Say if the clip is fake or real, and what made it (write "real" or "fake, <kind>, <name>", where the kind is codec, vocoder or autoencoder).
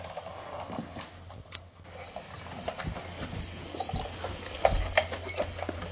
real